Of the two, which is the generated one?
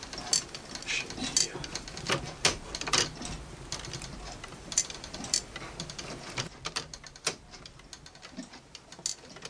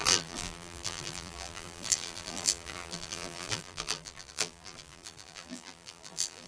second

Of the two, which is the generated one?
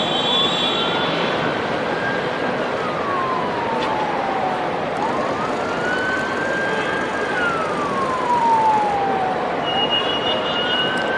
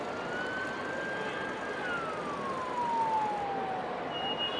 first